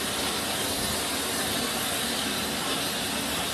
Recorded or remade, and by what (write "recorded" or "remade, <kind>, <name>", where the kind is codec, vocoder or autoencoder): recorded